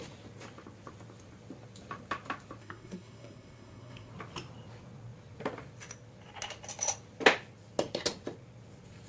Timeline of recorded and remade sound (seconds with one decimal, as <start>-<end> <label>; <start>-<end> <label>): 0.0-2.6 recorded; 2.6-4.1 remade; 4.1-9.1 recorded